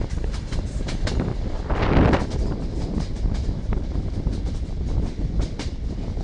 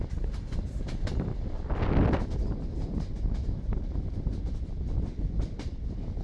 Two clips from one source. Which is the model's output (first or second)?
first